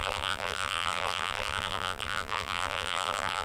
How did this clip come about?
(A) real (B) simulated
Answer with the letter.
B